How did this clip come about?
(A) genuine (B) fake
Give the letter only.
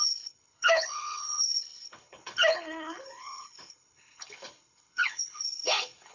B